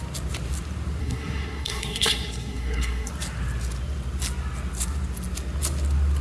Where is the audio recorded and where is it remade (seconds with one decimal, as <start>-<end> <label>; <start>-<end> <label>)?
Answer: 0.0-1.0 recorded; 1.0-3.1 remade; 3.1-6.2 recorded

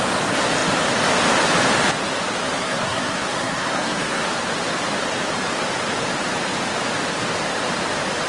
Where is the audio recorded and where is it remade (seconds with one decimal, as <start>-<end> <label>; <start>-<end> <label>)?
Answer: 0.0-2.6 recorded; 2.6-4.2 remade; 4.2-8.3 recorded

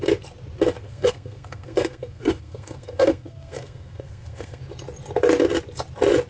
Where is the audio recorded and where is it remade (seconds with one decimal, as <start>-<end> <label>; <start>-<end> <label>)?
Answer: 0.0-0.8 recorded; 0.8-4.6 remade; 4.6-6.3 recorded

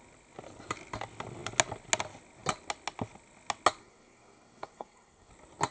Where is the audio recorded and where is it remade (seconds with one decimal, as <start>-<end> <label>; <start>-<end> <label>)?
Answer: 0.0-3.8 recorded; 3.8-5.3 remade; 5.3-5.7 recorded

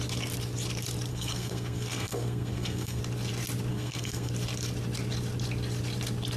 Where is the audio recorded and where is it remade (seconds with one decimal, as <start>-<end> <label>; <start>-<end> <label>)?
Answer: 0.0-1.1 recorded; 1.1-3.0 remade; 3.0-3.7 recorded; 3.7-4.3 remade; 4.3-6.4 recorded

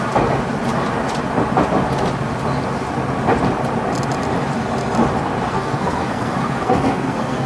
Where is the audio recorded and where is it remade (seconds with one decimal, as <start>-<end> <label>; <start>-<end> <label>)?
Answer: 0.0-5.5 recorded; 5.5-7.5 remade

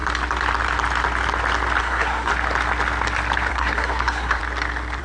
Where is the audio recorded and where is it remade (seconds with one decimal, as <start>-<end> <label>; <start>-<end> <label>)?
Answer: 0.0-1.8 recorded; 1.8-2.3 remade; 2.3-3.5 recorded; 3.5-4.4 remade; 4.4-5.0 recorded

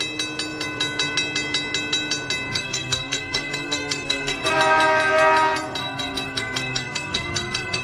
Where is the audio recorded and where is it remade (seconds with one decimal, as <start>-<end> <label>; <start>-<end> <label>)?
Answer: 0.0-2.5 recorded; 2.5-4.5 remade; 4.5-5.8 recorded; 5.8-7.8 remade